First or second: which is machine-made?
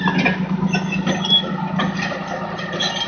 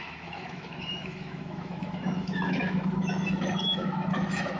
second